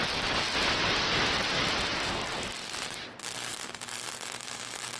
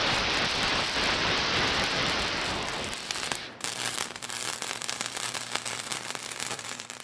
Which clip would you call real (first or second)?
first